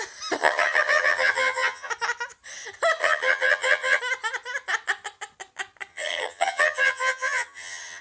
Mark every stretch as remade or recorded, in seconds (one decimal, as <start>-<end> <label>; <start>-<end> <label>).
0.0-0.4 recorded; 0.4-1.9 remade; 1.9-3.0 recorded; 3.0-4.0 remade; 4.0-5.9 recorded; 5.9-8.0 remade

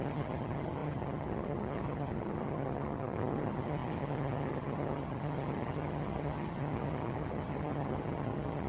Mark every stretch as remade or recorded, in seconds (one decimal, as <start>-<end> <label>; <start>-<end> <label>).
0.0-8.7 remade

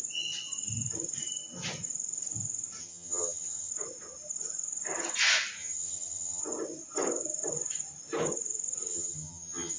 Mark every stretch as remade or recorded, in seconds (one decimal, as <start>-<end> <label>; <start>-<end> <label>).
0.0-2.8 recorded; 2.8-3.7 remade; 3.7-5.6 recorded; 5.6-6.4 remade; 6.4-8.9 recorded; 8.9-9.8 remade

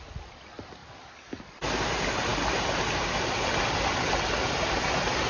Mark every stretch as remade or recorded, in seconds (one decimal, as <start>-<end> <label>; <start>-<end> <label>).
0.0-5.3 recorded